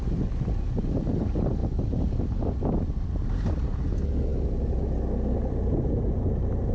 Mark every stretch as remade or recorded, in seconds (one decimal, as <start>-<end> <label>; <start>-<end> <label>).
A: 0.0-6.7 recorded